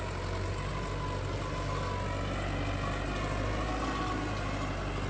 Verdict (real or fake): real